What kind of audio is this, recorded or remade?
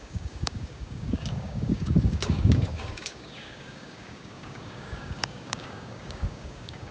remade